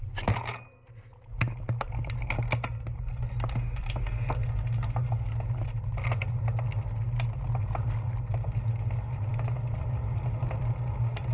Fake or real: real